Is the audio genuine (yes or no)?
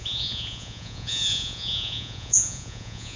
no